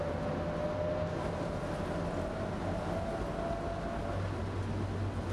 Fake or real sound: real